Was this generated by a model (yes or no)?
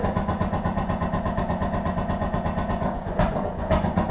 yes